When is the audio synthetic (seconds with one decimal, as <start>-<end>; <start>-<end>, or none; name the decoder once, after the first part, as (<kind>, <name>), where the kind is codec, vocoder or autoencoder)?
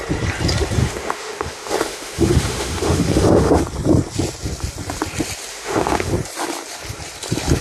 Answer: 0.8-3.6 (autoencoder, DAC-VAE); 5.5-6.1